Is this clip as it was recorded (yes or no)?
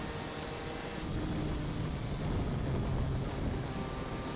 yes